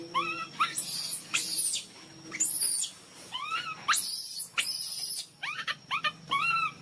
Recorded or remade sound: recorded